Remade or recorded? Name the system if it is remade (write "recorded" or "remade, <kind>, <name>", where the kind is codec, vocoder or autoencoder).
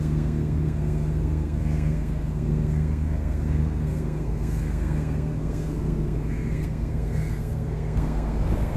remade, codec, SNAC